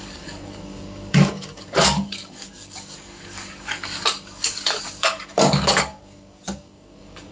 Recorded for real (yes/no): no